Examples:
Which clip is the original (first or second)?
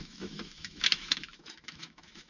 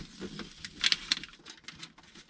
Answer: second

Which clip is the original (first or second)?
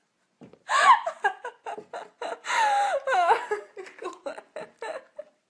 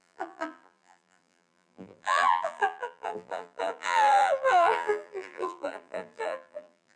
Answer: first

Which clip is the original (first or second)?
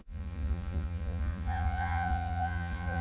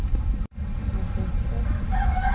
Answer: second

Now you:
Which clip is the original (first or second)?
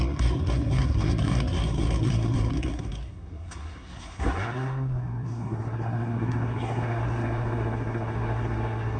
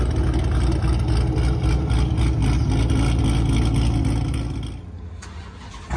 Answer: second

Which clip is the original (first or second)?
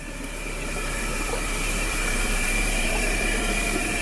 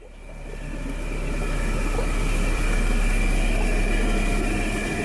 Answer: second